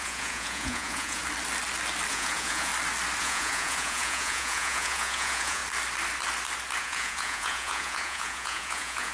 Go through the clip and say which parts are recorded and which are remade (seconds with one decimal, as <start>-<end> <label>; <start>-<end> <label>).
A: 0.0-1.2 remade; 1.2-2.1 recorded; 2.1-2.7 remade; 2.7-3.2 recorded; 3.2-5.6 remade; 5.6-6.8 recorded; 6.8-9.1 remade